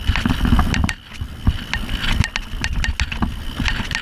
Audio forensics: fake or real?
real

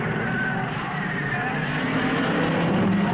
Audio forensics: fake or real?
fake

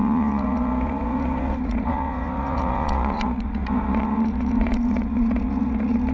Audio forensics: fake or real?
fake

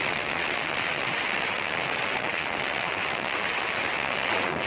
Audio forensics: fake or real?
fake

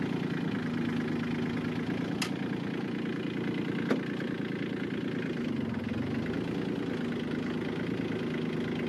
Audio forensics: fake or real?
real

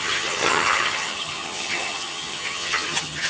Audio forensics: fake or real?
fake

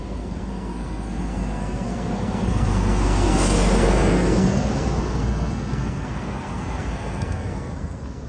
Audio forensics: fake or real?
fake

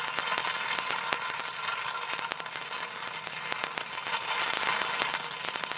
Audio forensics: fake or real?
real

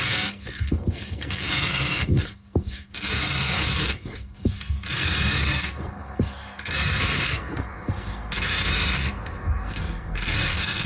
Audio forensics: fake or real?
fake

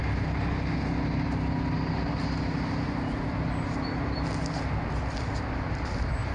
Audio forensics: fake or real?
real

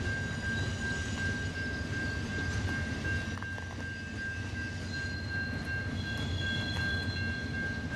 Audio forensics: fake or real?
real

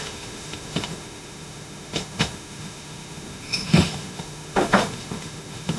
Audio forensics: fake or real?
fake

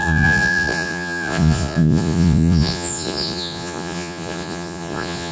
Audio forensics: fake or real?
fake